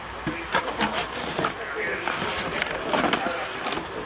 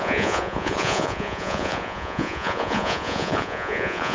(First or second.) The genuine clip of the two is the first